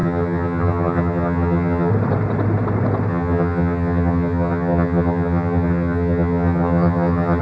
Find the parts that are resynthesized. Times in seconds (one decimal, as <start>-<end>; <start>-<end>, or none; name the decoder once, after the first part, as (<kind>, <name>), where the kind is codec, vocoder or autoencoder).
0.0-1.9 (vocoder, HiFi-GAN); 3.1-7.4